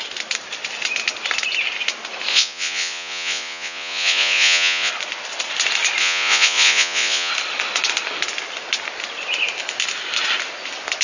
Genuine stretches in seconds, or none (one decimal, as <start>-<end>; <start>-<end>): 0.0-2.3; 4.9-6.0; 7.3-11.0